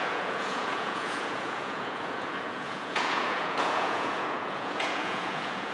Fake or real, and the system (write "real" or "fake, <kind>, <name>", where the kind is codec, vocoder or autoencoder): fake, vocoder, Vocos